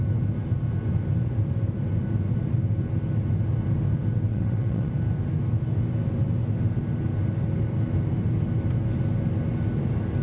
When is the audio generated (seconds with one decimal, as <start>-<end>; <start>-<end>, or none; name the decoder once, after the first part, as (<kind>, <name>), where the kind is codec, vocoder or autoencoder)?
4.3-4.9 (vocoder, WaveNeXt)